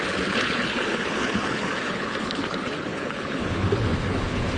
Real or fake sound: fake